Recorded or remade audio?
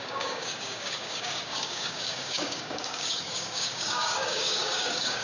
remade